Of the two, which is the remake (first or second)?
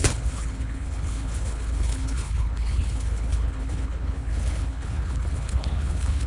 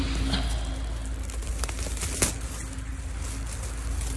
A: first